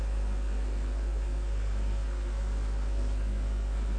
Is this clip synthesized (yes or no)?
yes